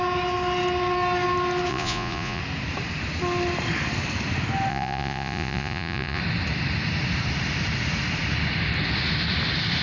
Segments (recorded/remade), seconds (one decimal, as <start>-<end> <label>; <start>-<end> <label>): 0.0-1.7 recorded; 1.7-2.4 remade; 2.4-4.7 recorded; 4.7-6.2 remade; 6.2-9.8 recorded